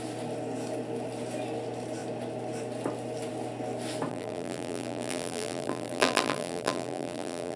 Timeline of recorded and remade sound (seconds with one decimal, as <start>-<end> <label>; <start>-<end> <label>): 0.0-4.1 recorded; 4.1-7.6 remade